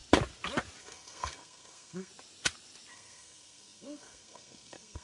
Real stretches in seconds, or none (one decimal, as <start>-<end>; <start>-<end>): 0.0-0.8; 2.1-2.9